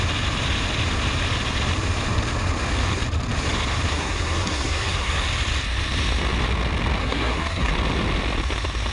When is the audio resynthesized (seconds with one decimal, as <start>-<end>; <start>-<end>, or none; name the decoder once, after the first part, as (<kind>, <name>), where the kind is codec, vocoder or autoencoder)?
3.9-5.2 (codec, SNAC); 7.0-7.7